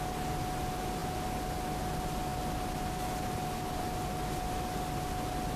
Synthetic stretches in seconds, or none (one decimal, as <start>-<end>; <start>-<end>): none